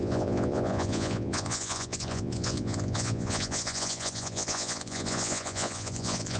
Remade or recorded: remade